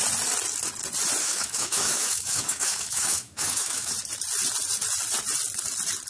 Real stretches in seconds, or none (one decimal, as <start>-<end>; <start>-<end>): 0.0-1.2; 3.9-6.1